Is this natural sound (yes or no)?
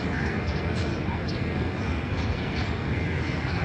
no